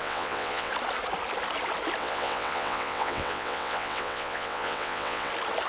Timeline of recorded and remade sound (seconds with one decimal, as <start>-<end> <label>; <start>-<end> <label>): 0.0-0.7 remade; 0.7-2.0 recorded; 2.0-5.3 remade; 5.3-5.7 recorded